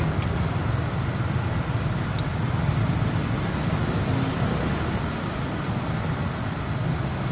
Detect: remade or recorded recorded